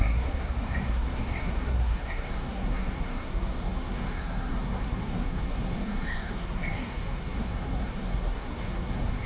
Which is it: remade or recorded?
remade